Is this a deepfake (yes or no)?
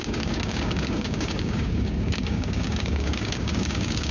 yes